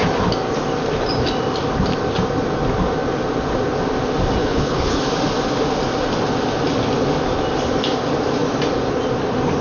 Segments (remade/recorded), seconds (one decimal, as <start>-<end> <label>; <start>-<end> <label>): 0.0-4.4 recorded; 4.4-5.0 remade; 5.0-9.6 recorded